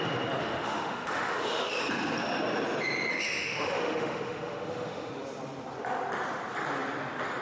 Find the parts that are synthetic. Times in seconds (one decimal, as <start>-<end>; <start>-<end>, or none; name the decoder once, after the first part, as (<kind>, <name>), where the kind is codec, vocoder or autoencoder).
0.4-1.8 (autoencoder, DAC-VAE); 3.1-5.1